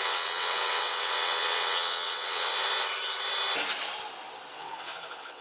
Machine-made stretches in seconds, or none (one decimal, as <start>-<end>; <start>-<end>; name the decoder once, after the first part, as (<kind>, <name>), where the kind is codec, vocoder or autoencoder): 0.0-2.5 (vocoder, WaveNeXt); 4.5-5.4